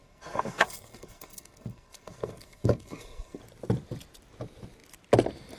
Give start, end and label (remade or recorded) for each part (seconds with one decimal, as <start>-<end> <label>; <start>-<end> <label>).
0.0-3.4 remade; 3.4-5.6 recorded